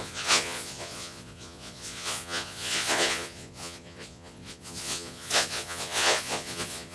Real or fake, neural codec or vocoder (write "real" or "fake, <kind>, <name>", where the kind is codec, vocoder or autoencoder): fake, vocoder, Vocos